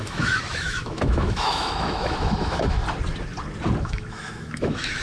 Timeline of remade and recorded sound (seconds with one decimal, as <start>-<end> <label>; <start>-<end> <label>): 0.0-2.8 remade; 2.8-3.8 recorded; 3.8-5.0 remade

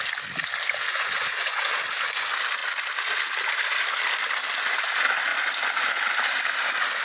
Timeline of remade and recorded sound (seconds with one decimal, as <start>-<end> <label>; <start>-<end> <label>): 0.0-0.8 recorded; 0.8-1.7 remade; 1.7-7.0 recorded

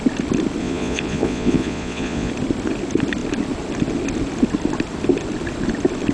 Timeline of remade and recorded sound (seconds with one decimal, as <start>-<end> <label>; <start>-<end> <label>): 0.0-0.6 recorded; 0.6-2.3 remade; 2.3-6.1 recorded